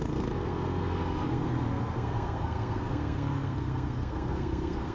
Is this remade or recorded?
remade